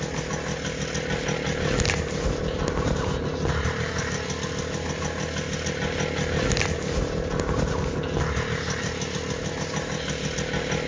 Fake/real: real